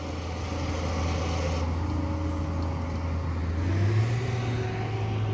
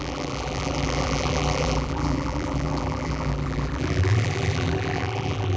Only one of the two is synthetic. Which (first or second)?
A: second